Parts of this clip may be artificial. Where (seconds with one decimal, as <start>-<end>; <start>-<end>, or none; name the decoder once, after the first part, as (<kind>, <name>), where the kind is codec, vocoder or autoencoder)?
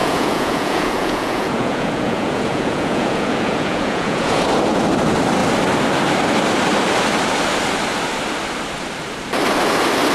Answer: 0.0-4.4 (vocoder, Vocos)